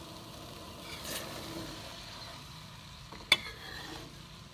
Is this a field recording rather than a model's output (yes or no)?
yes